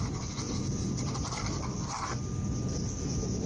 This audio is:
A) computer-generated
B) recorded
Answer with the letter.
B